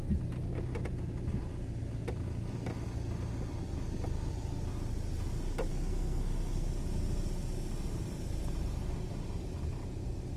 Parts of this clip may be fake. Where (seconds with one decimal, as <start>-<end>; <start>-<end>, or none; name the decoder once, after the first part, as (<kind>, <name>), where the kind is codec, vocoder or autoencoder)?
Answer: 5.7-6.7 (codec, SNAC)